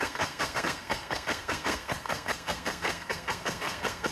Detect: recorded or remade remade